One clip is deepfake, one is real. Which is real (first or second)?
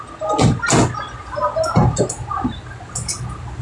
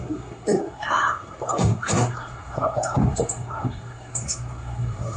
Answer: first